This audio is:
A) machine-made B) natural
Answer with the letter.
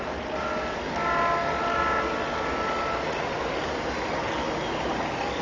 B